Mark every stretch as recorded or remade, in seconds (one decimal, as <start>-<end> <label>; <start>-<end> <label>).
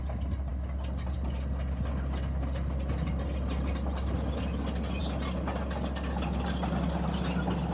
0.0-7.7 recorded